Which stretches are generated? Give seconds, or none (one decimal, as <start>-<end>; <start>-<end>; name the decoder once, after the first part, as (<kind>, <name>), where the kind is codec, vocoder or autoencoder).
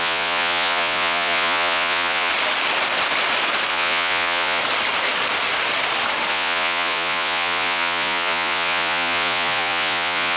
0.0-2.3 (vocoder, Vocos); 3.7-4.6; 6.3-10.4